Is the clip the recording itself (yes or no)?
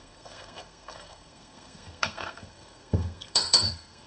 no